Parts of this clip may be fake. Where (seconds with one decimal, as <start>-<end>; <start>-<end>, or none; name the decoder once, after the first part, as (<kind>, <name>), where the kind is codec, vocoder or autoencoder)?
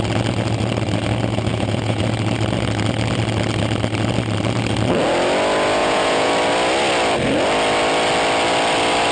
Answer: 1.5-2.0 (vocoder, Vocos); 5.8-6.3